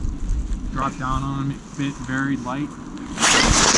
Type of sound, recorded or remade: recorded